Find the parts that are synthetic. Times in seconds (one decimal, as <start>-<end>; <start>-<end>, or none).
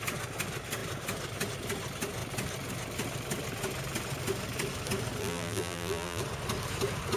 5.2-6.2